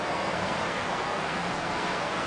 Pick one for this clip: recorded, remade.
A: remade